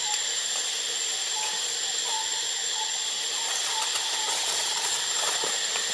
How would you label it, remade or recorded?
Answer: recorded